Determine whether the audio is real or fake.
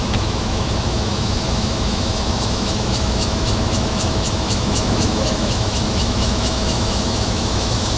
fake